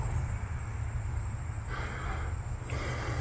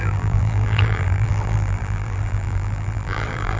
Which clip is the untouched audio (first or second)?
first